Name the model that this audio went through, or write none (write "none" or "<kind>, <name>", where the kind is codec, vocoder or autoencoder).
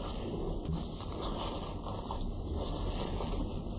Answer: none